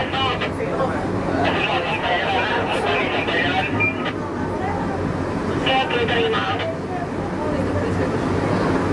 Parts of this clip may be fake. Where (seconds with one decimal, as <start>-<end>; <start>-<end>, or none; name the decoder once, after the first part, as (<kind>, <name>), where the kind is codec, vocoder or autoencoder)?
none